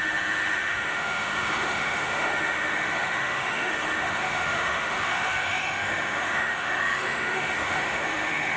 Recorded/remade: remade